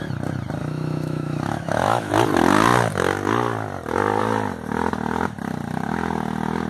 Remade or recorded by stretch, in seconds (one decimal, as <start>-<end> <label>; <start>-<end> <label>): 0.0-0.6 recorded; 0.6-2.1 remade; 2.1-6.7 recorded